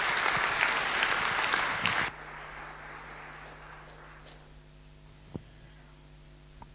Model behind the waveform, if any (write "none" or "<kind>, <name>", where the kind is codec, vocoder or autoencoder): none